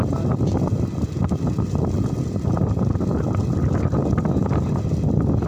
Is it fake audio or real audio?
real